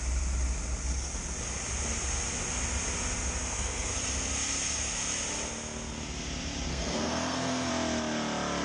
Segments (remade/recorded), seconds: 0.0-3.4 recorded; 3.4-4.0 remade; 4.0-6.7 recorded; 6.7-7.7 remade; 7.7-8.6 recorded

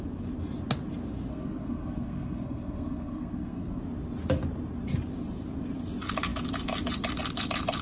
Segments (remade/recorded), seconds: 0.0-1.3 recorded; 1.3-3.8 remade; 3.8-7.8 recorded

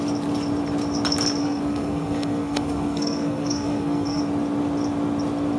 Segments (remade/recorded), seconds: 0.0-1.4 recorded; 1.4-4.2 remade; 4.2-5.6 recorded

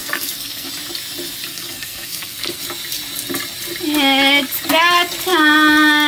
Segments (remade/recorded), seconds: 0.0-0.7 remade; 0.7-1.5 recorded; 1.5-2.6 remade; 2.6-6.1 recorded

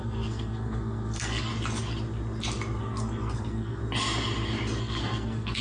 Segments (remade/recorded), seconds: 0.0-1.5 remade; 1.5-2.8 recorded; 2.8-3.8 remade; 3.8-4.8 recorded; 4.8-5.6 remade